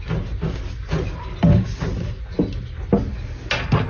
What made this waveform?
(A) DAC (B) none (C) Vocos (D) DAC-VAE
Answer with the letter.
B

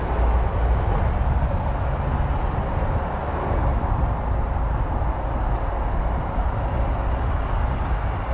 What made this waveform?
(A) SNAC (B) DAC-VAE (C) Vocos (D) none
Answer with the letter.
D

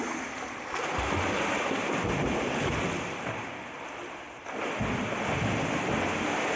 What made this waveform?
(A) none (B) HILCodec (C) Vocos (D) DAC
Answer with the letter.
A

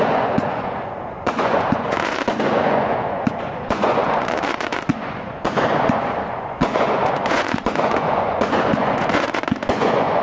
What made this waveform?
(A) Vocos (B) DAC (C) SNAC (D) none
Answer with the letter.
A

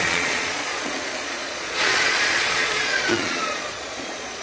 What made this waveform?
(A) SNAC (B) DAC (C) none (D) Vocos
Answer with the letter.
D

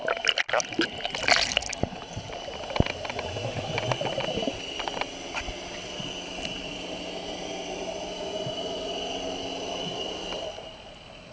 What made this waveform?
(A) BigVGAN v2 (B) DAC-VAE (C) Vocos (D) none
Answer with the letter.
D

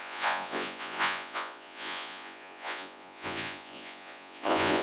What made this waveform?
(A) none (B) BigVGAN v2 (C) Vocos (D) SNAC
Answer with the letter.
C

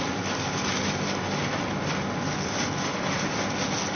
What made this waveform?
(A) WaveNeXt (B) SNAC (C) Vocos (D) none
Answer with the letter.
D